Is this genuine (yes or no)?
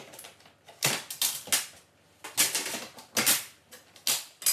yes